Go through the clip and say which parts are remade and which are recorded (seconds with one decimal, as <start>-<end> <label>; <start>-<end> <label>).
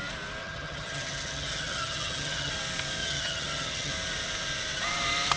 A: 0.0-0.4 recorded; 0.4-2.5 remade; 2.5-3.0 recorded; 3.0-3.9 remade; 3.9-5.4 recorded